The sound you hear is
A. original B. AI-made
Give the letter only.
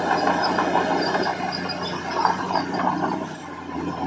A